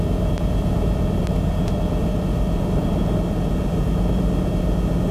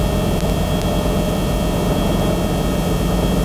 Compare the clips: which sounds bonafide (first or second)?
second